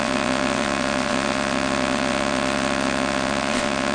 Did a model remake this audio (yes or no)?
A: yes